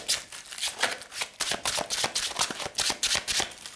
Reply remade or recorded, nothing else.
recorded